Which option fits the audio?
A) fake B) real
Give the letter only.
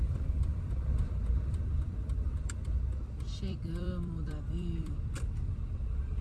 A